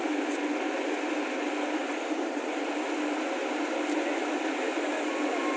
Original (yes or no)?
yes